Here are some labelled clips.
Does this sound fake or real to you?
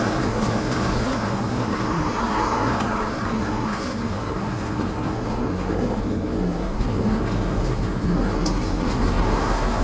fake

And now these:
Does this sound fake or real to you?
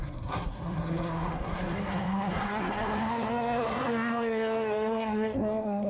fake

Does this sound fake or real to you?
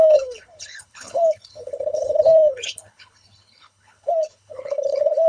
fake